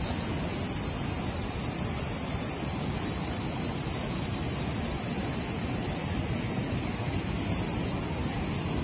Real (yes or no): yes